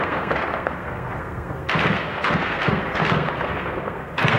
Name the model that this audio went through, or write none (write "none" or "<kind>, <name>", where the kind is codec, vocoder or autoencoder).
codec, SNAC